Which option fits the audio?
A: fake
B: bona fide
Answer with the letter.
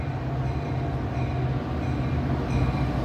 B